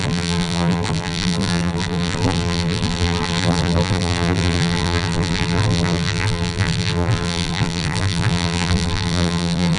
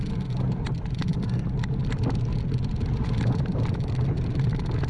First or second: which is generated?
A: first